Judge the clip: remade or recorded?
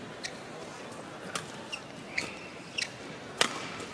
recorded